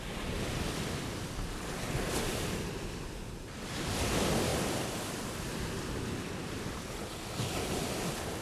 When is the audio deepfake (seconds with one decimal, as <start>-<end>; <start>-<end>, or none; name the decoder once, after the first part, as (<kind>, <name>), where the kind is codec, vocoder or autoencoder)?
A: none